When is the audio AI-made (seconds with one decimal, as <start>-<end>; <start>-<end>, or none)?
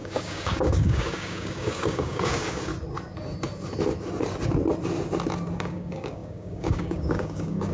0.0-2.7; 5.6-7.7